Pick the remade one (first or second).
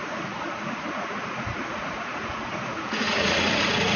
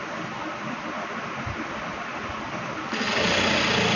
first